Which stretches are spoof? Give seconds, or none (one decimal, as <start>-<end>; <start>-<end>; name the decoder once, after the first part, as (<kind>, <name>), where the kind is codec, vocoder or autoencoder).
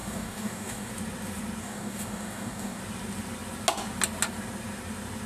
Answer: 0.0-0.9 (codec, DAC); 1.6-2.8